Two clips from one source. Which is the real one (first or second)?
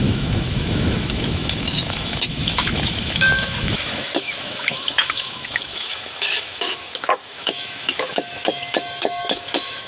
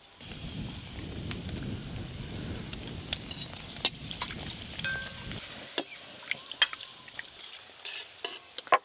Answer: second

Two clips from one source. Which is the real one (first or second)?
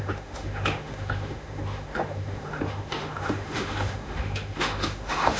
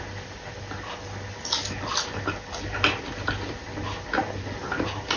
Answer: second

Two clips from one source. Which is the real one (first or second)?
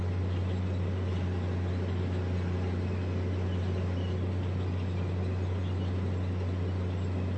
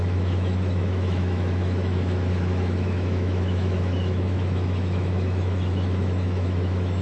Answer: first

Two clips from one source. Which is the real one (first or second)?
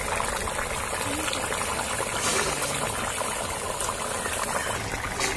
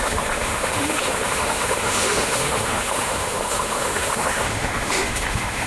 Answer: first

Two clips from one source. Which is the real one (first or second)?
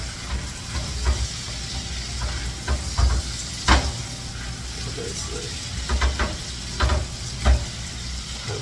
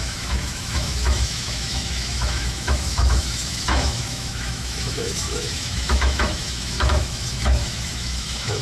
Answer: first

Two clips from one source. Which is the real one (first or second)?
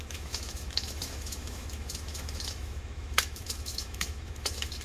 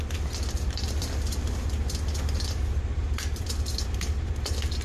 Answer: second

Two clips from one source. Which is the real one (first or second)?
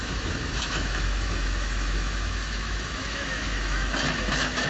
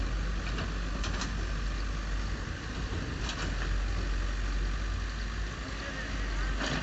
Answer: second